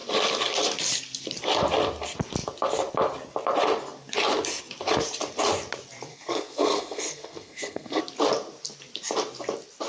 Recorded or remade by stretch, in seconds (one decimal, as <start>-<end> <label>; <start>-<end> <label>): 0.0-6.1 recorded; 6.1-8.0 remade; 8.0-9.9 recorded